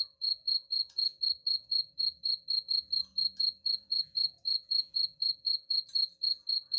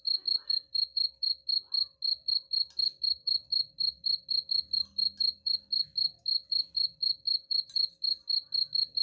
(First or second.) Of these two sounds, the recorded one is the second